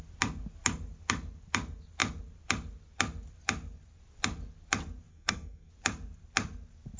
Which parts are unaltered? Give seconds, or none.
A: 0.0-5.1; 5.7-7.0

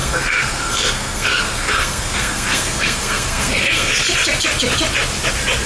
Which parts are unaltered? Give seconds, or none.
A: 3.9-5.7

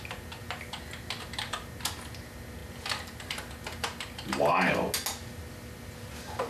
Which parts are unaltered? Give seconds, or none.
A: 0.0-6.5

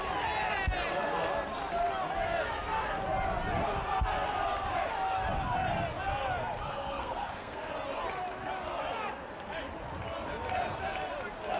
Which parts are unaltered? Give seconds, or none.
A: 0.0-6.7; 7.7-11.6

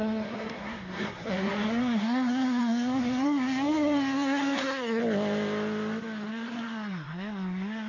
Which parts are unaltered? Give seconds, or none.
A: 5.0-6.3

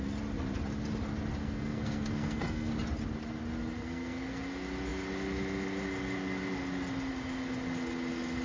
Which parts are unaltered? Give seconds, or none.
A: 0.0-1.4; 2.7-3.8; 4.4-8.4

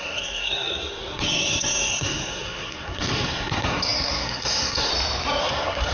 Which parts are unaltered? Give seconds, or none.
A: 4.9-5.4

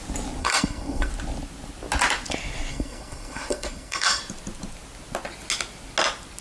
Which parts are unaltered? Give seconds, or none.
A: 0.0-0.4; 1.1-2.7; 4.2-6.4